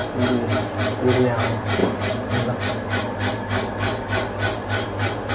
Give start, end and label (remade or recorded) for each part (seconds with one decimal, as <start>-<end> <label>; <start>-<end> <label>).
0.0-5.3 recorded